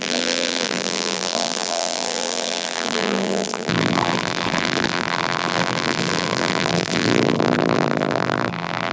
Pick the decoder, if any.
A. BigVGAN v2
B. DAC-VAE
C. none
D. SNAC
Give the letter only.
A